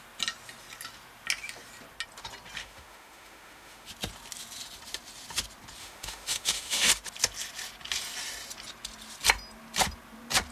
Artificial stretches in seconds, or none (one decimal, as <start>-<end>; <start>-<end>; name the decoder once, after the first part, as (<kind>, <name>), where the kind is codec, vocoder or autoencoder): 2.6-3.9 (autoencoder, DAC-VAE); 5.8-6.9